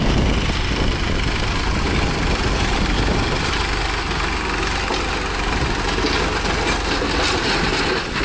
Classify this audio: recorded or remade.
recorded